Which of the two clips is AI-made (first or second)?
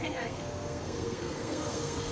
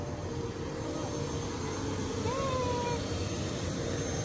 first